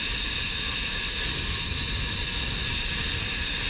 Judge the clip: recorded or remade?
recorded